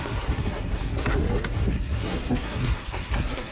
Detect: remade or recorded remade